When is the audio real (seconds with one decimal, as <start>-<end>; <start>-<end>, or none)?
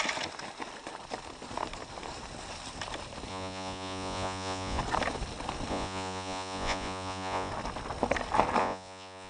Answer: 0.0-3.3; 4.8-5.7; 7.5-8.6